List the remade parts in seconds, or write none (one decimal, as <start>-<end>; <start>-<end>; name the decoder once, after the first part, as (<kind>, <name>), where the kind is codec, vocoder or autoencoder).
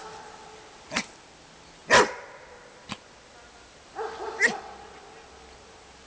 none